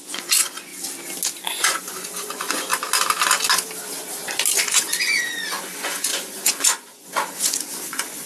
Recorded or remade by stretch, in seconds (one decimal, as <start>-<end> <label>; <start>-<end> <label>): 0.0-0.7 remade; 0.7-1.4 recorded; 1.4-2.7 remade; 2.7-4.6 recorded; 4.6-8.3 remade